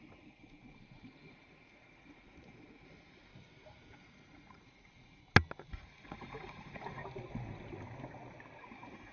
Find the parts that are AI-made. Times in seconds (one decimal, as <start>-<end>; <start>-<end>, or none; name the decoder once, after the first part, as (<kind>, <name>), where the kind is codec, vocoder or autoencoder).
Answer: 0.0-3.3 (vocoder, Vocos); 4.0-5.2; 5.7-7.0; 8.6-9.1